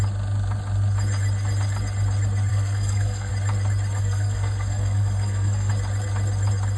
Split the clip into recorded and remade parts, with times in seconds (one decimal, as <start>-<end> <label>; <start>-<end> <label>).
0.0-2.5 recorded; 2.5-3.3 remade; 3.3-4.0 recorded; 4.0-5.7 remade; 5.7-6.8 recorded